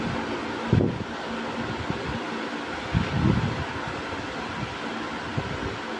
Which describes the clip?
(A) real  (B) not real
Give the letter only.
A